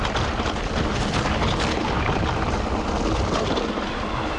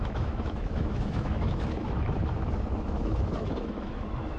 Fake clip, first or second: second